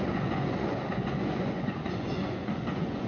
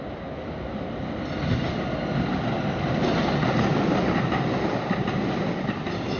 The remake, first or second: first